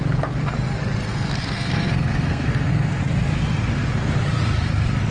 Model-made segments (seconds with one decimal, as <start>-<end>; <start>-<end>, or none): 1.1-3.0